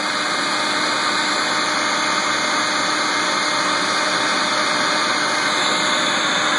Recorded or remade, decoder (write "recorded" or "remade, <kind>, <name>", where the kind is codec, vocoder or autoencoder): recorded